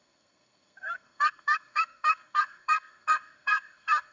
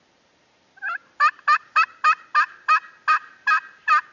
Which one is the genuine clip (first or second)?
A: second